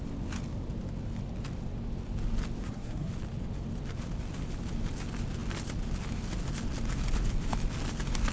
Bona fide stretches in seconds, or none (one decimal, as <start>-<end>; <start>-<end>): 0.0-2.6; 3.1-8.3